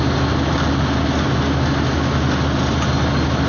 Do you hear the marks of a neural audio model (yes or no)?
no